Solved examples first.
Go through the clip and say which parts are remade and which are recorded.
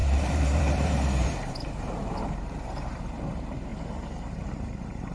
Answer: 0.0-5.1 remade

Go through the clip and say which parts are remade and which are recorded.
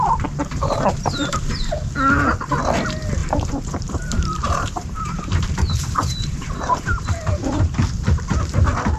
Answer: 0.0-0.4 recorded; 0.4-1.4 remade; 1.4-3.2 recorded; 3.2-7.7 remade; 7.7-9.0 recorded